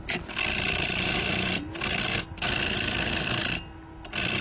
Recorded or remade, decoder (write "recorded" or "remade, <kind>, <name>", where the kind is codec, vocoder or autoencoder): recorded